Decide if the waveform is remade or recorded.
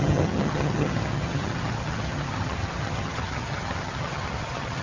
remade